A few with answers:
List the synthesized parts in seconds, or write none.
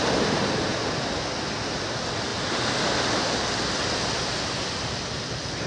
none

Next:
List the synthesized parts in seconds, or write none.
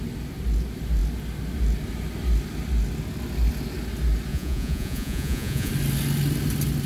4.3-5.7 (vocoder, Vocos)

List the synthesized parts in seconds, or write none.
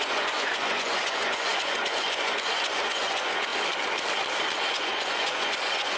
0.0-3.5 (vocoder, Vocos); 4.7-6.0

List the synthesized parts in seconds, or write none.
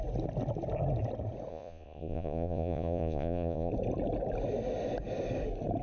1.5-3.7 (vocoder, Vocos)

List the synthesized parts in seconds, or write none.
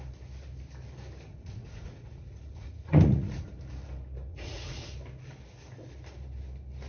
1.3-3.4 (vocoder, Vocos); 4.3-4.9